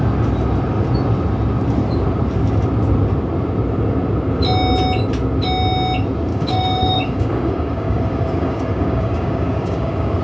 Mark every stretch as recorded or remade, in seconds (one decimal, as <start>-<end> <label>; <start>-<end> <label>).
0.0-6.3 recorded; 6.3-10.2 remade

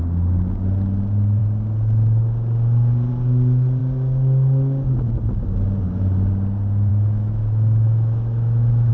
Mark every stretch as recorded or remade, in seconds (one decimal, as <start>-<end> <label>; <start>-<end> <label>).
0.0-6.9 recorded; 6.9-8.9 remade

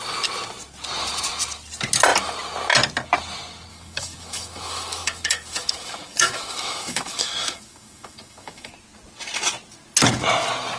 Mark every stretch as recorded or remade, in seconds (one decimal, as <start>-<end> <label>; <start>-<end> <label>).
0.0-3.7 recorded; 3.7-8.7 remade; 8.7-10.8 recorded

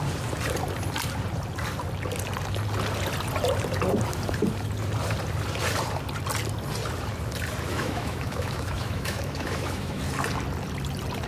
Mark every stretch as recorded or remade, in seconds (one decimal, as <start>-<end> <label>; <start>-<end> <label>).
0.0-7.7 recorded; 7.7-10.0 remade; 10.0-11.3 recorded

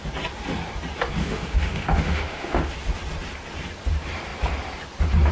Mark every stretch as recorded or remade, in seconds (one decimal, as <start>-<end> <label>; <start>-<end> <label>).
0.0-1.2 recorded; 1.2-2.7 remade; 2.7-5.3 recorded